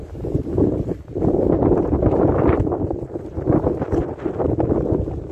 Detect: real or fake real